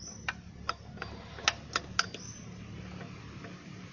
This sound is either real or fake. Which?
real